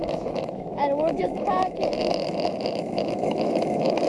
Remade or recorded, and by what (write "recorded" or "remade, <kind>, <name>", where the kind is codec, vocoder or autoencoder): remade, autoencoder, DAC-VAE